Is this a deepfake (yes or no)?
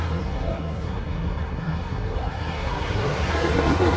yes